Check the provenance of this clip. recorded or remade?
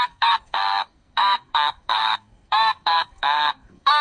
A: remade